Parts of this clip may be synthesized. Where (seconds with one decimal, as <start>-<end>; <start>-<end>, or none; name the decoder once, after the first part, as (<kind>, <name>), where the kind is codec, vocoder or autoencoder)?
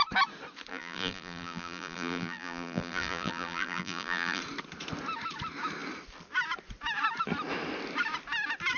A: 0.7-4.4 (vocoder, BigVGAN v2)